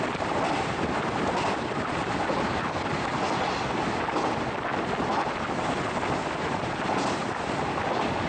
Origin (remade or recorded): recorded